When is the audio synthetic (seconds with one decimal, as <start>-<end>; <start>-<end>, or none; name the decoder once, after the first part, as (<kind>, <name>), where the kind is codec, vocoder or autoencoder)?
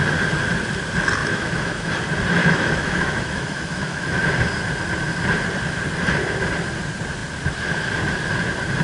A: 1.2-1.9 (autoencoder, DAC-VAE); 2.4-4.2